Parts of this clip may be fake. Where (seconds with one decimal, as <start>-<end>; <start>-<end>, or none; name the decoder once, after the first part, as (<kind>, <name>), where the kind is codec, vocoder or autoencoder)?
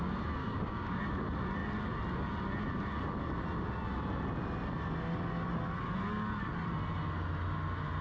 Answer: 0.4-1.0 (codec, DAC)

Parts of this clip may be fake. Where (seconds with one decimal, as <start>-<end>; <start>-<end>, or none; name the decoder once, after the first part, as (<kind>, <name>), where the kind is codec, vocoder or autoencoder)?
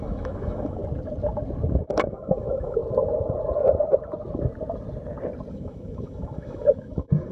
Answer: 0.0-0.8 (autoencoder, DAC-VAE); 1.7-2.8; 5.5-7.3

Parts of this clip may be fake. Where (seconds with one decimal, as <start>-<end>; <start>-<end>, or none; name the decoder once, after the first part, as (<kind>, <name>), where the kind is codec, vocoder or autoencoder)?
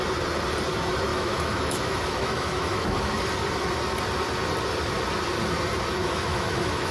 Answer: 1.1-3.2 (autoencoder, DAC-VAE); 6.0-6.9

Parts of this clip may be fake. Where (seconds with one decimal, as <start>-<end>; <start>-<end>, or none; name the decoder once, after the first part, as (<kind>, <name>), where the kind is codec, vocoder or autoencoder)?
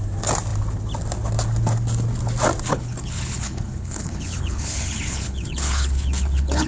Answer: 2.7-6.7 (codec, HILCodec)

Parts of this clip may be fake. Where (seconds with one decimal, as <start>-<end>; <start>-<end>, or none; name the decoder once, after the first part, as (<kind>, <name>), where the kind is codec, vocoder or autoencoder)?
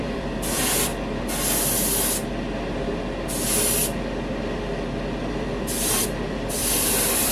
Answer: 0.0-0.9 (vocoder, BigVGAN v2); 5.3-7.3